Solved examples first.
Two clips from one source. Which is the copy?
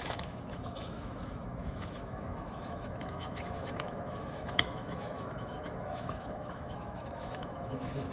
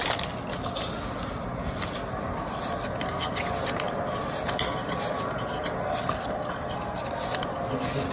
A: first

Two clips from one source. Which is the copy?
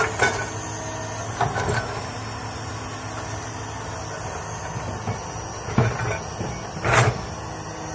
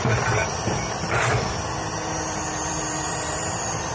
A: second